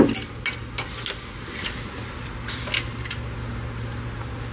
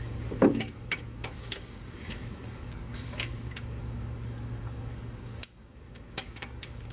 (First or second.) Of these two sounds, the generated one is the second